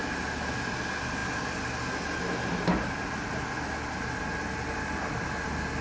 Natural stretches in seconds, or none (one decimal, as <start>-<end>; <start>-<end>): 0.0-5.8